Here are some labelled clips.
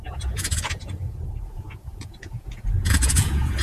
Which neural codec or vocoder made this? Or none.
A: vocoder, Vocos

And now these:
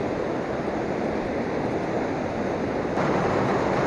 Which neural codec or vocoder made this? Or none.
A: none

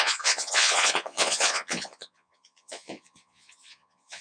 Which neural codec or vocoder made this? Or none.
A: vocoder, Vocos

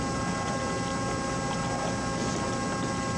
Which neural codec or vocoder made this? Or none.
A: none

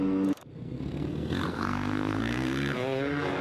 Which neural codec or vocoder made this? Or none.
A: codec, SNAC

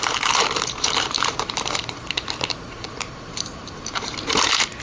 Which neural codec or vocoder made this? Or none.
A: vocoder, BigVGAN v2